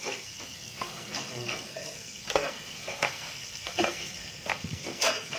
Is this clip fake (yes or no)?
yes